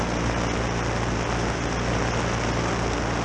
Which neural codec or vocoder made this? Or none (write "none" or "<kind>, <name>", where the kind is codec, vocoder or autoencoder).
none